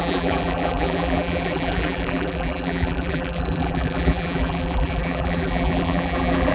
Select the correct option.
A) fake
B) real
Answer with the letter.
A